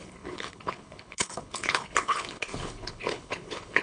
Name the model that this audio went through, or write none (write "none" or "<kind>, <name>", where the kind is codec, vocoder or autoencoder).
codec, HILCodec